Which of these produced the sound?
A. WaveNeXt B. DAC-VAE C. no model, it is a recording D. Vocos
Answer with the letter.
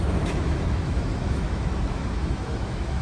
B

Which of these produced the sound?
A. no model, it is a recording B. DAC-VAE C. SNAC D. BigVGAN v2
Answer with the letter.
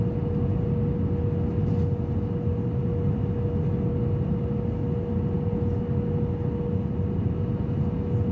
A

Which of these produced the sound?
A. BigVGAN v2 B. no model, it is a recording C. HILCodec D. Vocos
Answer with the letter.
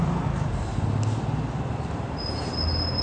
B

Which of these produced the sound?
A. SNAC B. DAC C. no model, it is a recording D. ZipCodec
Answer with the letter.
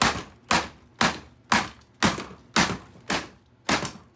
C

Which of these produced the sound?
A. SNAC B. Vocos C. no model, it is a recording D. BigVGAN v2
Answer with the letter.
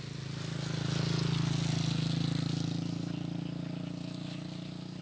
C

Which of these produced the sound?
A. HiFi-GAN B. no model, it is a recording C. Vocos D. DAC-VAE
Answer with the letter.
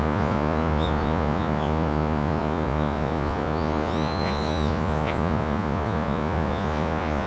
C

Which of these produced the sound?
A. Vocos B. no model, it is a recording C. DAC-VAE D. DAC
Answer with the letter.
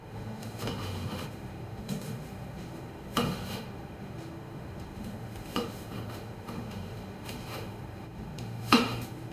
C